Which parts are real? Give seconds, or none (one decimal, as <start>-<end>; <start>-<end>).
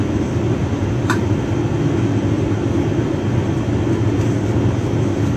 0.0-0.6; 1.2-5.4